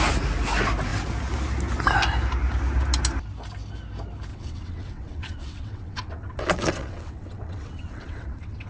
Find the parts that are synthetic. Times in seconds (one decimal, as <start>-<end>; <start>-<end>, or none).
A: 4.3-8.7